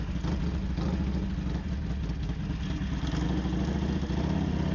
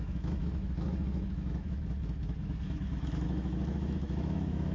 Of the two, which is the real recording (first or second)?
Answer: first